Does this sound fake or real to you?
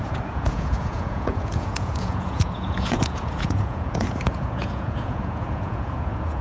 fake